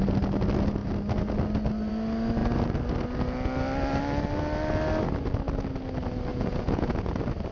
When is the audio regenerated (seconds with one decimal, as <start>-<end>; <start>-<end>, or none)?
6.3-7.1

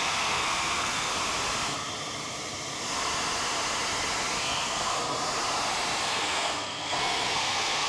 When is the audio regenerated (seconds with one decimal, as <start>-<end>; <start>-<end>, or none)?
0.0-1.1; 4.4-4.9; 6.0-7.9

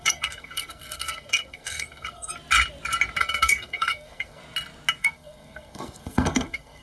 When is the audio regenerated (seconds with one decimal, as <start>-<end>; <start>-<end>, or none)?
0.0-2.3; 3.2-4.4; 5.0-6.8

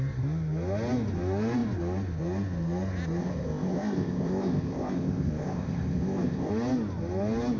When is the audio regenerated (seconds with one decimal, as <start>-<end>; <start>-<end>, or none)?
3.2-6.5

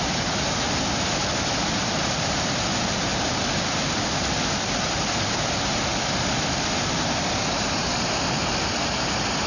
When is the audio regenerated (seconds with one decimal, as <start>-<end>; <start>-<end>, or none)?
3.1-4.8; 5.9-8.6

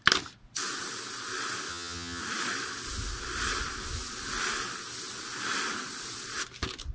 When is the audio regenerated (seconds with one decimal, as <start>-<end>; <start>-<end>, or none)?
1.7-2.2

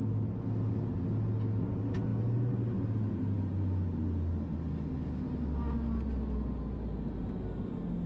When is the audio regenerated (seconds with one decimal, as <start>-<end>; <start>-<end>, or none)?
none

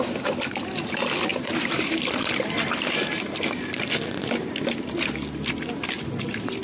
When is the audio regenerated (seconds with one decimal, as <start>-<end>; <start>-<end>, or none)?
1.3-4.3